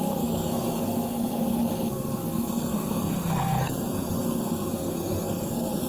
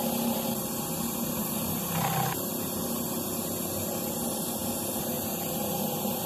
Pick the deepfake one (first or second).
first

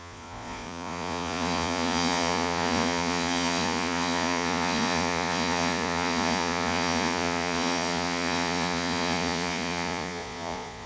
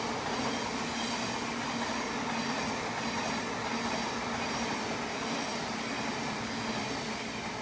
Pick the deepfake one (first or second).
first